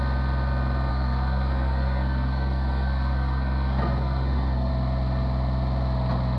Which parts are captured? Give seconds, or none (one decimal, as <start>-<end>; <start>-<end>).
0.0-0.9; 4.7-6.4